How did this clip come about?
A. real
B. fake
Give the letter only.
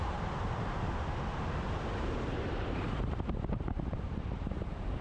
B